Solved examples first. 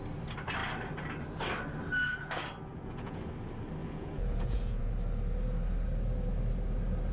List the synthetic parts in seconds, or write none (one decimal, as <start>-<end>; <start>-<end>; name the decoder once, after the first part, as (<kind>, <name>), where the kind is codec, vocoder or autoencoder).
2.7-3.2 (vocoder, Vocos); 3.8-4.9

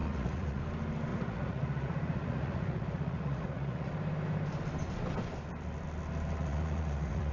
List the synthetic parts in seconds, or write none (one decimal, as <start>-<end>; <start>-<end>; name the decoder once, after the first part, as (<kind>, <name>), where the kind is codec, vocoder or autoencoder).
0.0-0.6 (vocoder, Vocos); 1.1-3.9; 6.4-7.3

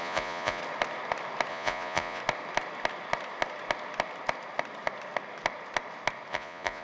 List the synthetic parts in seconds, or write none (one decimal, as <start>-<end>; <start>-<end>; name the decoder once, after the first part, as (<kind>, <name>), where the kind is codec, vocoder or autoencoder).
0.0-0.6 (vocoder, Vocos); 1.5-2.2; 6.3-6.8

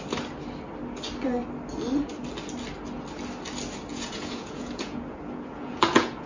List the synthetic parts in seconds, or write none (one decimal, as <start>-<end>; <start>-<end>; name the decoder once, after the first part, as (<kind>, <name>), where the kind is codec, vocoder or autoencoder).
3.9-6.3 (vocoder, Vocos)

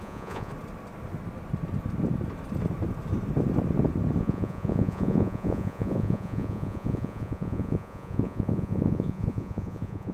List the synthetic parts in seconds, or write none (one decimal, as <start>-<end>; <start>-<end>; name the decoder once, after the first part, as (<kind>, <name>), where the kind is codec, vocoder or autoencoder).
0.0-0.5 (vocoder, Vocos); 4.2-10.1

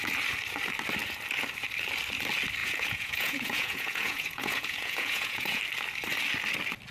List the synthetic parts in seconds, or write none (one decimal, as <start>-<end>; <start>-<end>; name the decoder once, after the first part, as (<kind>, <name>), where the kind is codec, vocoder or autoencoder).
2.6-5.6 (vocoder, Vocos)